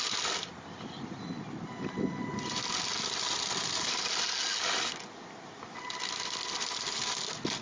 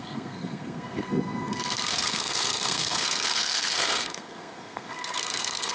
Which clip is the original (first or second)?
first